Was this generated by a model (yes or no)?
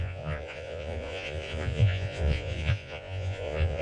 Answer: yes